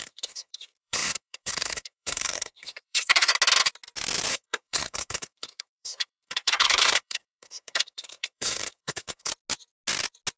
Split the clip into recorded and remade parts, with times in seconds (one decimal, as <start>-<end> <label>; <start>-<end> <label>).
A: 0.0-3.3 remade; 3.3-4.3 recorded; 4.3-9.3 remade; 9.3-10.4 recorded